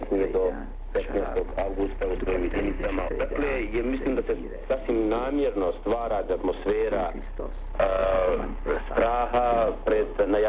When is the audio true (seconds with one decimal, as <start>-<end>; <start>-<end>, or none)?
0.0-8.0; 9.3-10.5